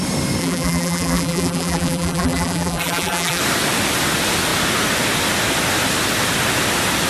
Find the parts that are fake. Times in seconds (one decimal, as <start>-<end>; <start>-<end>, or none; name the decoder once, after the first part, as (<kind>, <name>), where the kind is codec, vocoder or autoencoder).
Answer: 0.4-3.4 (vocoder, BigVGAN v2)